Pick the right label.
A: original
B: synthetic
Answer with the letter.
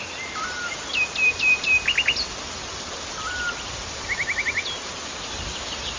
A